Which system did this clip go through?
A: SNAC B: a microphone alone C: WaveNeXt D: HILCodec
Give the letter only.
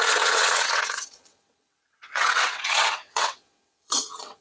C